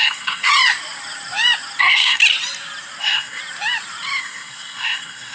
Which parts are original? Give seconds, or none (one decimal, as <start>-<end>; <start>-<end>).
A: 0.5-1.8; 2.2-3.0; 3.4-4.2